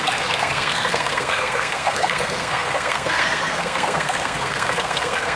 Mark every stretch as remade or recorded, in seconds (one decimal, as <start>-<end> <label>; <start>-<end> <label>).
0.0-5.4 remade